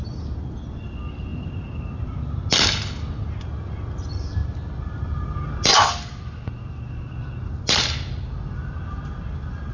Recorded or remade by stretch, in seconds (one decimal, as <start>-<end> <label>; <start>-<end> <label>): 0.0-4.4 recorded; 4.4-5.2 remade; 5.2-5.7 recorded; 5.7-6.3 remade; 6.3-9.7 recorded